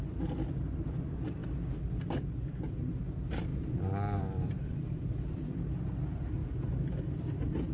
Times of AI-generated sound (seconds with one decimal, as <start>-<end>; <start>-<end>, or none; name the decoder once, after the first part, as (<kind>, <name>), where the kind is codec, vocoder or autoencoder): 0.0-1.4 (vocoder, BigVGAN v2); 2.6-6.4; 7.0-7.7